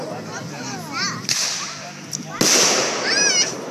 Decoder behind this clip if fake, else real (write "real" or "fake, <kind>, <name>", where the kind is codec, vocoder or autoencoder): real